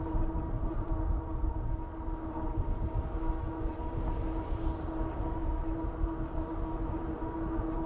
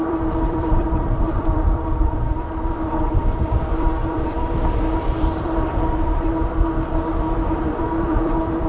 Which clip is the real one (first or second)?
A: first